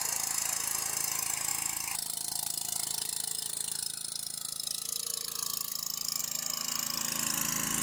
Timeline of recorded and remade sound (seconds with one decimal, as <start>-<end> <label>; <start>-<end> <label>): 0.0-7.8 recorded